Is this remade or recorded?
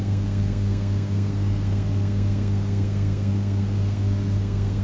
remade